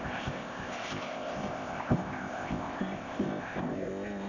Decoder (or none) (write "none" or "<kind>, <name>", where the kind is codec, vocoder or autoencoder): codec, ZipCodec